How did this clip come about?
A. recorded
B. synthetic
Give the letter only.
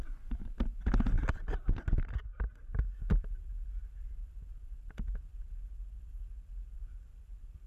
A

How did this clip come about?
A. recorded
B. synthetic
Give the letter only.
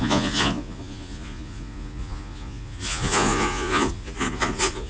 B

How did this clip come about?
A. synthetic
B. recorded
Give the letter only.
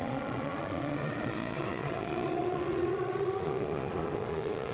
A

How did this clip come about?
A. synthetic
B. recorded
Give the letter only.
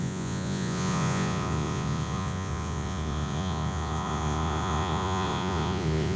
A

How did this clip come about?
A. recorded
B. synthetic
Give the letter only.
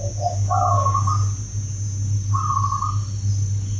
A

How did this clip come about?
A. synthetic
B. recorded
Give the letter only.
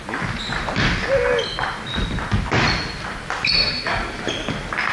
B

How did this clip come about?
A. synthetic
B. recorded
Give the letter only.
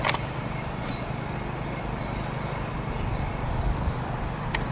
B